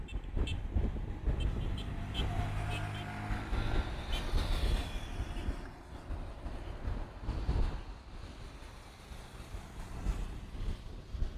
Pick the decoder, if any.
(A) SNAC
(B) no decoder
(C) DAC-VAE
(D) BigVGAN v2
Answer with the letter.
B